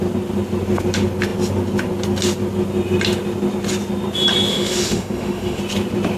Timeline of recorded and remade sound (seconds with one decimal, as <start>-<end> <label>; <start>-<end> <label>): 0.0-4.5 recorded; 4.5-5.6 remade; 5.6-6.2 recorded